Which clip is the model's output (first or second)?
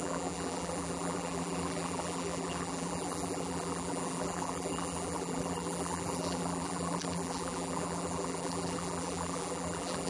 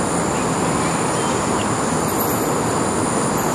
first